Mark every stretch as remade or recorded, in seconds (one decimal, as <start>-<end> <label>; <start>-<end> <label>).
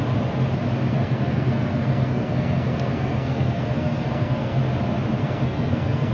0.0-0.9 recorded; 0.9-4.6 remade; 4.6-5.2 recorded; 5.2-6.1 remade